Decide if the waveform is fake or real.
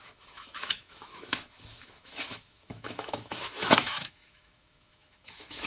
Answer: fake